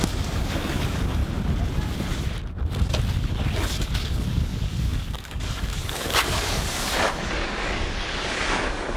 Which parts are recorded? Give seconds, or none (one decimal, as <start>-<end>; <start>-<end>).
1.2-3.7